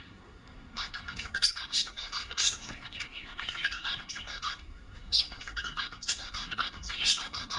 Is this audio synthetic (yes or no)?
yes